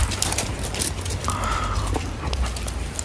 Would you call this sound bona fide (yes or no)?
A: yes